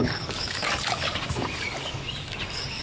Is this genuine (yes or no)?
no